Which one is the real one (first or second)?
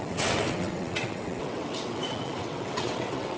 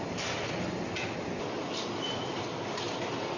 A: second